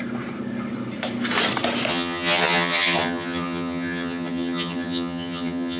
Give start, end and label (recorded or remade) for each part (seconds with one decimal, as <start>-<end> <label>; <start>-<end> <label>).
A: 0.0-1.9 recorded; 1.9-5.8 remade